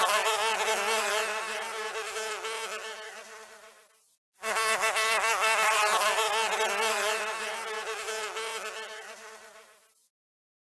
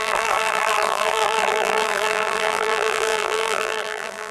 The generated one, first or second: second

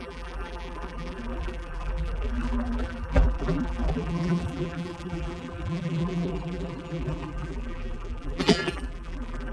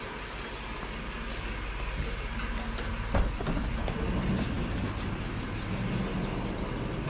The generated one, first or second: first